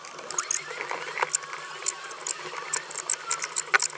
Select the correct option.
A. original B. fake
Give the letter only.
A